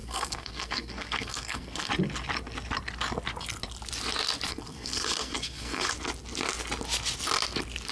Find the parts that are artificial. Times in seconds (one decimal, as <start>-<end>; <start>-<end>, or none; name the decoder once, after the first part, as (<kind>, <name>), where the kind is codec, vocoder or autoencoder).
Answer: 0.0-1.9 (codec, SNAC); 4.5-5.9